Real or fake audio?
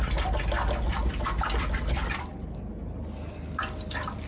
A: real